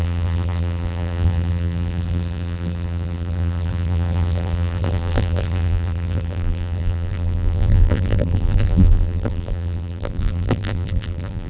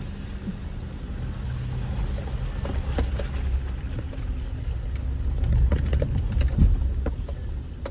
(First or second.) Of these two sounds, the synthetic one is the first